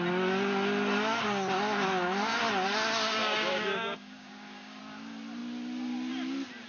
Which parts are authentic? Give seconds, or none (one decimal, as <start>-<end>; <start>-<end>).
0.0-3.2; 4.8-6.7